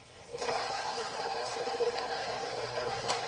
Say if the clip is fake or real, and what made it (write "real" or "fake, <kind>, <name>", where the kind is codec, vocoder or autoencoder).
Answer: fake, codec, SNAC